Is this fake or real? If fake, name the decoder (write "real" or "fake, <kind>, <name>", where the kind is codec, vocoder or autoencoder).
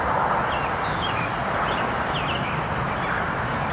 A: real